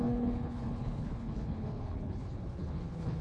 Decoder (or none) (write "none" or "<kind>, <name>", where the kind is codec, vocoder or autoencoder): codec, HILCodec